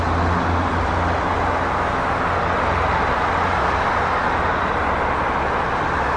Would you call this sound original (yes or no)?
yes